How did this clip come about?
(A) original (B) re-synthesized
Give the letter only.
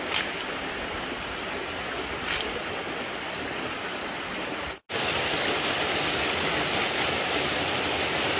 A